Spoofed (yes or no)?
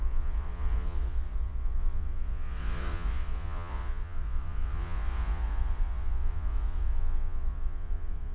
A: yes